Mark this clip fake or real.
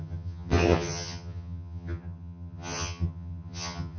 fake